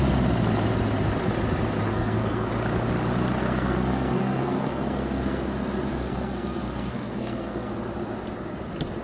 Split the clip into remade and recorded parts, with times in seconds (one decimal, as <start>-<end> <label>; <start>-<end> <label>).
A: 0.0-1.9 recorded; 1.9-2.5 remade; 2.5-3.4 recorded; 3.4-5.4 remade; 5.4-5.9 recorded; 5.9-7.7 remade; 7.7-9.0 recorded